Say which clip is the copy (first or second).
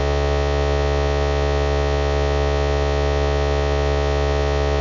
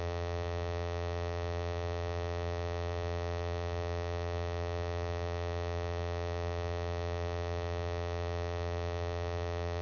second